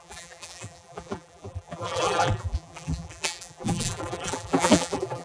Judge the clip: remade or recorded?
remade